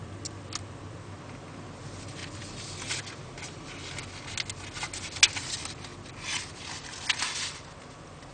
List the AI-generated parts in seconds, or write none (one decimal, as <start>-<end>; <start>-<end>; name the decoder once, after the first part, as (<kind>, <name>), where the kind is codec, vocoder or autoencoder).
none